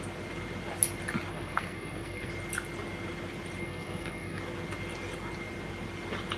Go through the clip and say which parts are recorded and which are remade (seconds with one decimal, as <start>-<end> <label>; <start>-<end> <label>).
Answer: 0.0-1.3 recorded; 1.3-2.3 remade; 2.3-3.6 recorded; 3.6-4.4 remade; 4.4-6.4 recorded